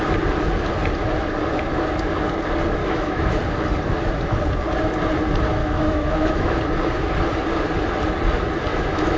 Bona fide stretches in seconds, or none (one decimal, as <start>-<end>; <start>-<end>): 0.0-2.8; 3.4-5.6; 6.6-8.7

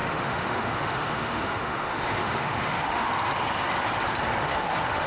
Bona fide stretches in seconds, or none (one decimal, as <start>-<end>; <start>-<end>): 3.1-4.4

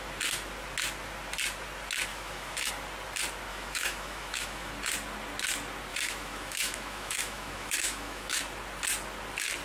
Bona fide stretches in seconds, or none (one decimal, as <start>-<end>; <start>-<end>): 0.0-2.1; 2.7-3.5; 4.7-5.9; 8.4-9.6

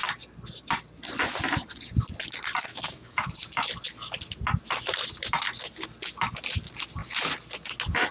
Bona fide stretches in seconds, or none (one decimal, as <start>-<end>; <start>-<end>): 0.0-2.7; 3.3-8.1

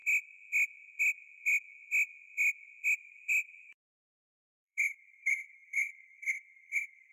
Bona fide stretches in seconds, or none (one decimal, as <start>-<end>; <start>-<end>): 0.0-2.9

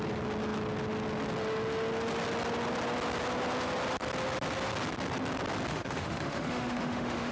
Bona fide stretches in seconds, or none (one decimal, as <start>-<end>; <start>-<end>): 0.0-5.7